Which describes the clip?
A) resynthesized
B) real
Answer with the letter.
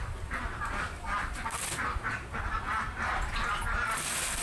B